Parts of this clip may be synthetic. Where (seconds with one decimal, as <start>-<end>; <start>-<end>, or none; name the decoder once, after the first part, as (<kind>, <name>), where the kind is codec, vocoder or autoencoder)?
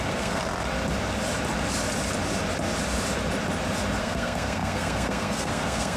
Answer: 0.0-0.4 (codec, SNAC); 4.0-6.0